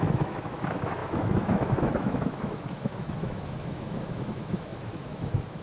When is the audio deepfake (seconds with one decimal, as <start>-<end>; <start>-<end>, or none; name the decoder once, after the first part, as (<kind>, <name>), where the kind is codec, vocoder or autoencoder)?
0.0-5.6 (autoencoder, DAC-VAE)